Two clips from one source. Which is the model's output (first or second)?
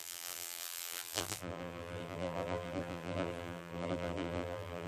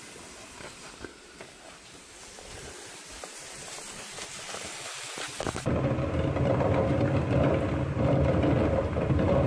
first